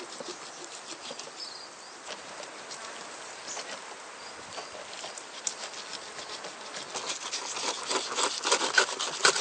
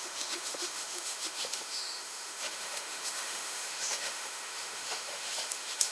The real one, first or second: first